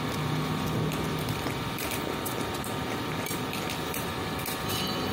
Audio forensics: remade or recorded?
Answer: recorded